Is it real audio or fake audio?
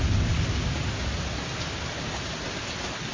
real